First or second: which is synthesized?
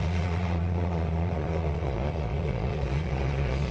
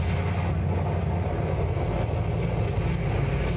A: first